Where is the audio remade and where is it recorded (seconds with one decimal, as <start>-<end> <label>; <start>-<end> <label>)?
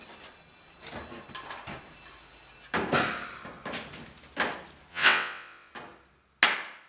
0.0-4.9 recorded; 4.9-5.7 remade; 5.7-6.9 recorded